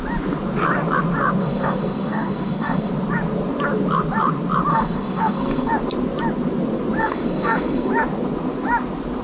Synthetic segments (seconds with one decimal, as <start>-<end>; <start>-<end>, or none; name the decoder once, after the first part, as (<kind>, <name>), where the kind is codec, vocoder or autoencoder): 1.4-2.9 (codec, SNAC); 4.7-5.7; 7.0-7.9